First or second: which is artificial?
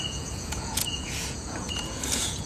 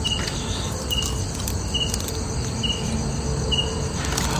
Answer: first